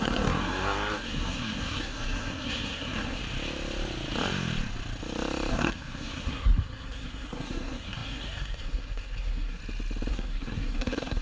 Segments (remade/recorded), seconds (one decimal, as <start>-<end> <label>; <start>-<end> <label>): 0.0-3.2 remade; 3.2-5.5 recorded; 5.5-9.6 remade; 9.6-10.1 recorded; 10.1-11.2 remade